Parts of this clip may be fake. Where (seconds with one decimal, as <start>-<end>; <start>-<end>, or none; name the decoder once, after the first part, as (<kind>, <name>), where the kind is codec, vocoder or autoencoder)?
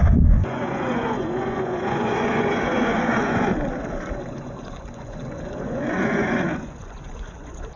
0.0-3.5 (vocoder, Vocos); 4.3-7.8